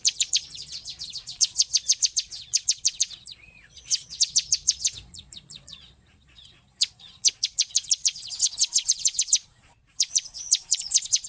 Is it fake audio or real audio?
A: fake